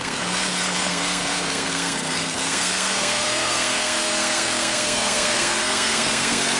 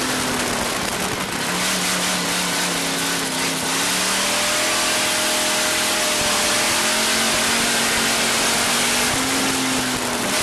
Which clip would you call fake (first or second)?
first